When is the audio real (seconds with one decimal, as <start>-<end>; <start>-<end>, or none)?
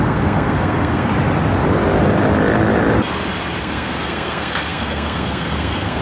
1.1-3.6